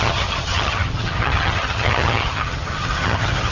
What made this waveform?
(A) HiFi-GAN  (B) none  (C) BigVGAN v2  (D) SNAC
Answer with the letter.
A